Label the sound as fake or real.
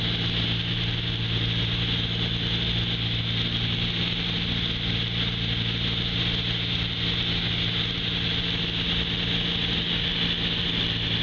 real